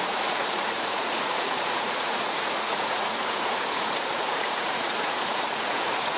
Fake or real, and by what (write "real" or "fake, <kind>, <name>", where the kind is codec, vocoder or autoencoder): fake, vocoder, Vocos